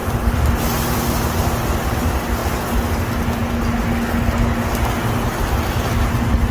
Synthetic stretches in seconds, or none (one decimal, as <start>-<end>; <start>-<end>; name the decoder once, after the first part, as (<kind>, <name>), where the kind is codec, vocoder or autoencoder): 0.0-1.9 (vocoder, BigVGAN v2)